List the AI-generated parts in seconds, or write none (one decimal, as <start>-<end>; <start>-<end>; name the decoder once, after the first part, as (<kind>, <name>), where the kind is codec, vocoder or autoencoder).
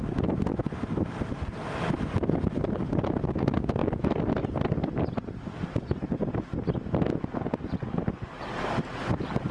0.5-1.3 (vocoder, BigVGAN v2); 3.8-5.4